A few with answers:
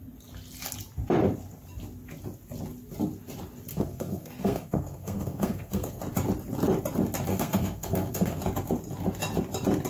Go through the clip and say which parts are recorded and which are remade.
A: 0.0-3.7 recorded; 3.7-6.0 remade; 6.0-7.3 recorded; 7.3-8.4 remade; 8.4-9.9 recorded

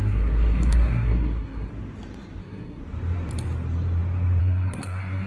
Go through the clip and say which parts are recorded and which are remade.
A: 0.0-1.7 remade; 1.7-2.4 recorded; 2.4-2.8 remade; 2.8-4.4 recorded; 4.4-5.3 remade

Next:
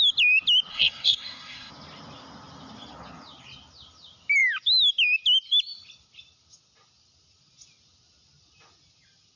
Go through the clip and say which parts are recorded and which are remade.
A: 0.0-0.7 recorded; 0.7-1.7 remade; 1.7-9.4 recorded

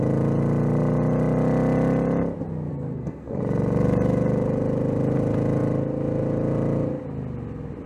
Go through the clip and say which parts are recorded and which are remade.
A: 0.0-2.7 recorded; 2.7-3.4 remade; 3.4-7.9 recorded